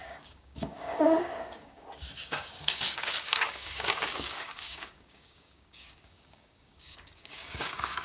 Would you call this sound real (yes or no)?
no